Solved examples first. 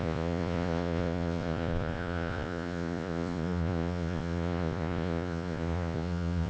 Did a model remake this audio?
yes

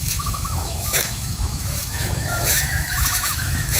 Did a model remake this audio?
yes